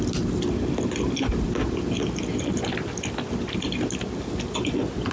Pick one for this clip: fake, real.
real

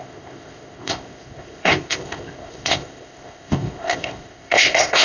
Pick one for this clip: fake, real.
fake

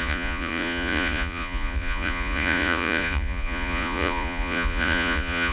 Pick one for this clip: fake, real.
fake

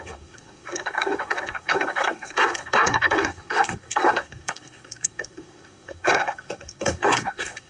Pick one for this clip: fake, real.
fake